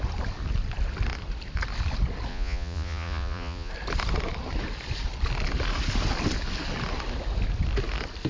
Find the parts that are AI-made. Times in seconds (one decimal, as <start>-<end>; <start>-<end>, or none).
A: 2.3-3.7